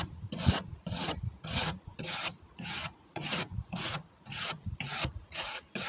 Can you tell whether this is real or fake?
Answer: fake